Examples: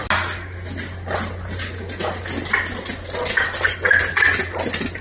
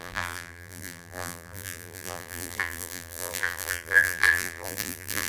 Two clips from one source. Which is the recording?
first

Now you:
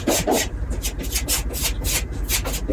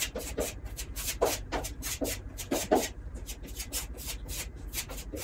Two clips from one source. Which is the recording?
first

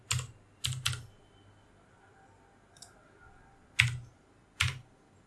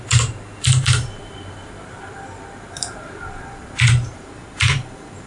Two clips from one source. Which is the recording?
first